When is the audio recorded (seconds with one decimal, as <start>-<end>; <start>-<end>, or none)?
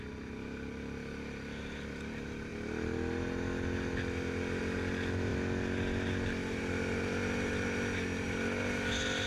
0.0-9.3